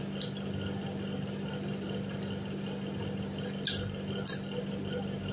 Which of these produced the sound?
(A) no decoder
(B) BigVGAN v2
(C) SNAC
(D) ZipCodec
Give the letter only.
A